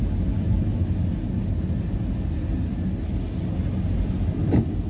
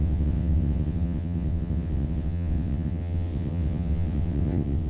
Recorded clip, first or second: first